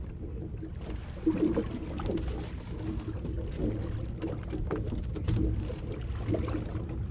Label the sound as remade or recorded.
recorded